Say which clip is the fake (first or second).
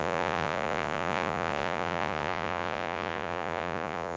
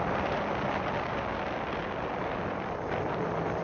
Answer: first